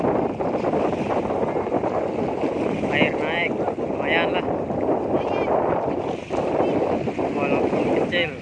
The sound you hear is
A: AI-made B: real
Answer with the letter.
B